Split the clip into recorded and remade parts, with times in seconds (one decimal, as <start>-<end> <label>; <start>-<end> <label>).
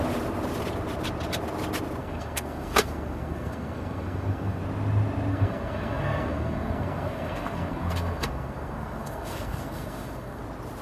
0.0-2.0 recorded; 2.0-4.6 remade; 4.6-5.3 recorded; 5.3-10.4 remade; 10.4-10.8 recorded